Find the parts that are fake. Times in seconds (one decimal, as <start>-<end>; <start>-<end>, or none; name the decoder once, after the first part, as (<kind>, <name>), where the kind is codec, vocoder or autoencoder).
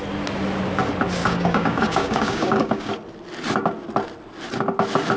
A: 1.2-2.9 (codec, DAC)